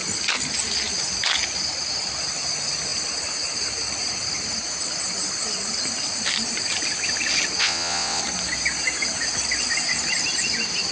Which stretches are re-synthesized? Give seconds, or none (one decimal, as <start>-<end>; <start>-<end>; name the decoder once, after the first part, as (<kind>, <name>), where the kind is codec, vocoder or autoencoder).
7.6-8.2 (vocoder, WaveNeXt)